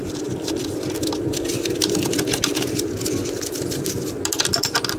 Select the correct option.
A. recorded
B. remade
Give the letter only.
A